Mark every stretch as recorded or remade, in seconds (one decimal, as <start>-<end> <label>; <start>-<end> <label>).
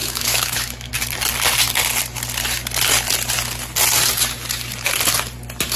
0.0-0.9 remade; 0.9-5.8 recorded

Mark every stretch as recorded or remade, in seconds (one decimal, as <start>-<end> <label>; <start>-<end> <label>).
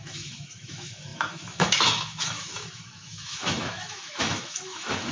0.0-5.1 remade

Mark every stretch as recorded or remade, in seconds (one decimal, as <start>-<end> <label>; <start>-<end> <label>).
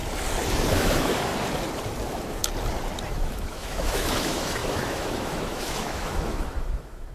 0.0-0.7 recorded; 0.7-1.3 remade; 1.3-2.0 recorded; 2.0-2.4 remade; 2.4-3.1 recorded; 3.1-7.1 remade